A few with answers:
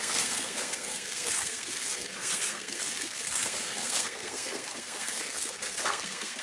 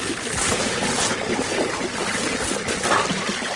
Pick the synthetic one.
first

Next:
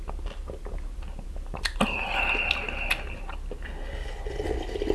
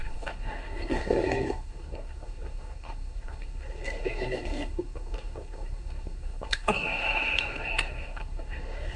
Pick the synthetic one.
second